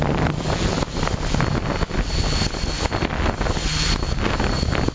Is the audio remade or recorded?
recorded